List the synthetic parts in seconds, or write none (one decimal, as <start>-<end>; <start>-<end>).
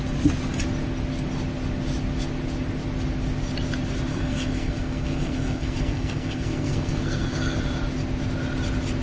4.1-7.6